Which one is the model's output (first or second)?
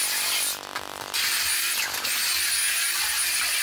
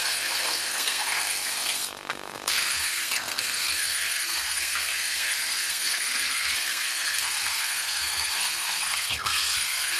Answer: second